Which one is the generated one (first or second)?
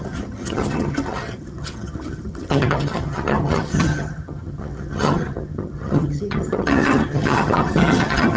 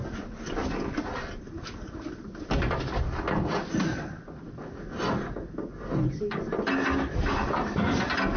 first